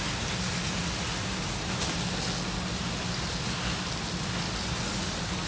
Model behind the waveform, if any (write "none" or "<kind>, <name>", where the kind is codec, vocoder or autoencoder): none